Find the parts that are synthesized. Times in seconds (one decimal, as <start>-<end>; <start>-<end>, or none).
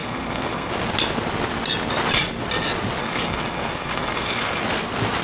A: 0.0-0.7; 3.0-4.6